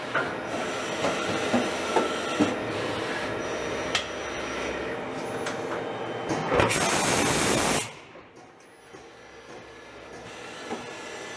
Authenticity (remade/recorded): recorded